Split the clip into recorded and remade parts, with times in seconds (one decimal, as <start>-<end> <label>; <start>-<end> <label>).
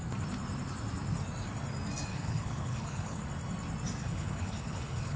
0.0-2.1 recorded; 2.1-3.2 remade; 3.2-4.0 recorded; 4.0-5.2 remade